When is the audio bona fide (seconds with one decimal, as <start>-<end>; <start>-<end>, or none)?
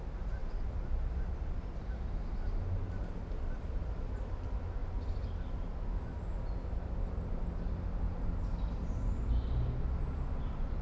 0.0-10.8